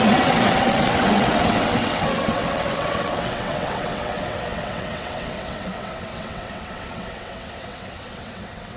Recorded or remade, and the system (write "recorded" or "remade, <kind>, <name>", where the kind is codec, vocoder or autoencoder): remade, vocoder, WaveNeXt